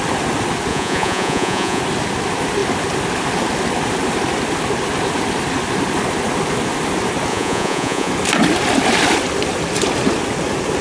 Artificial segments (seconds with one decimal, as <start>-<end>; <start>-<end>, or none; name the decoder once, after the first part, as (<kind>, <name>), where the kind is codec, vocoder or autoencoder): 0.7-1.8 (vocoder, Vocos); 7.3-8.1